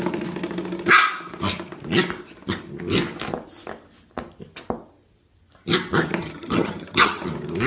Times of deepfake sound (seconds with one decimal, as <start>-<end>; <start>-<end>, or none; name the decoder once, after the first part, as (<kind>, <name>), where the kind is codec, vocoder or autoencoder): 6.2-7.2 (vocoder, HiFi-GAN)

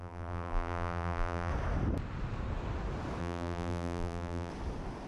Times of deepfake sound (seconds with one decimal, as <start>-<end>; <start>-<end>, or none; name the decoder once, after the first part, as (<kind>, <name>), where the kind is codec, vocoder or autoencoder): 0.0-1.5 (vocoder, BigVGAN v2); 3.2-4.5

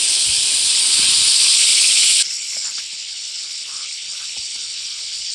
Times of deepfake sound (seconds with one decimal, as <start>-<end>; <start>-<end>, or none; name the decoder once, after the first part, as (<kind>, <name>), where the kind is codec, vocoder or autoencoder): 0.0-5.3 (codec, HILCodec)

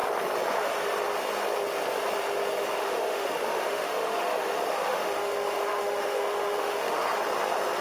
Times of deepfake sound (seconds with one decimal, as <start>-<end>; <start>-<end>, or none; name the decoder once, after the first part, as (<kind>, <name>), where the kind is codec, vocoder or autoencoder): 2.8-7.0 (autoencoder, DAC-VAE)

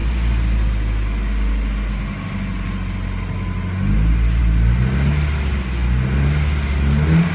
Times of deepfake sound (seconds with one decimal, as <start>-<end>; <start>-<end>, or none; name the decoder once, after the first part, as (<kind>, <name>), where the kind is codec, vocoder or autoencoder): none

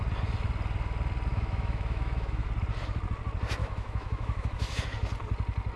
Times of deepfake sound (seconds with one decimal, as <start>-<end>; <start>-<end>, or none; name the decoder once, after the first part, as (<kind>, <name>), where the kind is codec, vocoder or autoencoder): 1.3-2.5 (autoencoder, DAC-VAE); 3.6-4.8

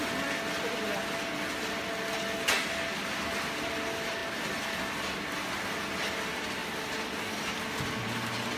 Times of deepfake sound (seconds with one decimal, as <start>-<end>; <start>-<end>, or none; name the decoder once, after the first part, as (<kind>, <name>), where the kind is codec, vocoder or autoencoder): none